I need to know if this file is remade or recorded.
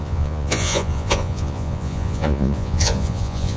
remade